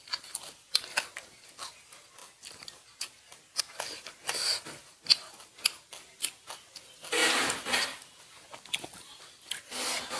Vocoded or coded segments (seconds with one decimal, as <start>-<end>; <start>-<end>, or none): none

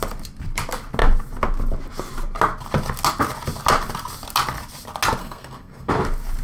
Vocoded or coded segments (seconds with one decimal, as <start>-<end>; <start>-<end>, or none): 5.2-5.9